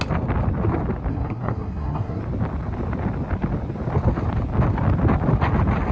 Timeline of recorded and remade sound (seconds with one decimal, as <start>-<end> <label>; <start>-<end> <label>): 0.0-1.1 recorded; 1.1-2.2 remade; 2.2-5.9 recorded